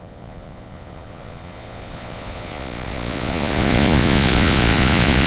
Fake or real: fake